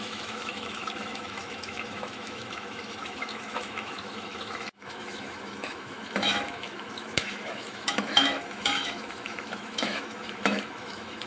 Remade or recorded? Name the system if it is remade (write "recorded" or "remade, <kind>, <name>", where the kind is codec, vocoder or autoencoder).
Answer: remade, autoencoder, DAC-VAE